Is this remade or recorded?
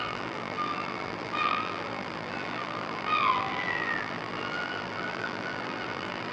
remade